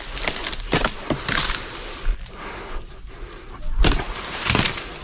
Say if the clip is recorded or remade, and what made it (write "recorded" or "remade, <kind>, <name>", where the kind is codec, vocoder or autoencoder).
recorded